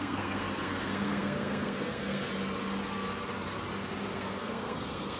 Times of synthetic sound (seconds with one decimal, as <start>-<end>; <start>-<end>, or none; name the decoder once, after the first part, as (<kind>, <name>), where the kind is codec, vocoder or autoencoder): 0.0-2.3 (codec, SNAC); 4.1-5.2

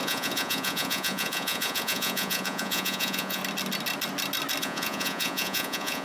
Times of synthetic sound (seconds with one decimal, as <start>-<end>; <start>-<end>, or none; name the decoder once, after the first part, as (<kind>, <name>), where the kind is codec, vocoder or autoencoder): 0.0-3.4 (vocoder, Vocos); 4.6-6.0